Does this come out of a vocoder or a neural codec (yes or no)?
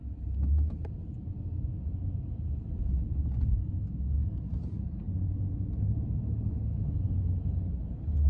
no